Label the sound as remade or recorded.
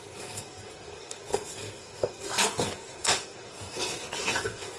remade